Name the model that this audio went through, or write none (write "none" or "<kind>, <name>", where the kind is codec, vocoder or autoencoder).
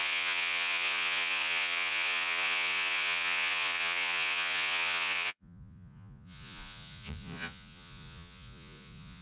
vocoder, Vocos